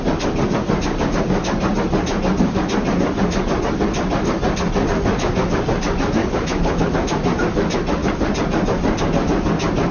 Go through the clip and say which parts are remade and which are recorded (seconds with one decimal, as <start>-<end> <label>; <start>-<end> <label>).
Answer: 0.0-6.2 recorded; 6.2-6.9 remade; 6.9-9.9 recorded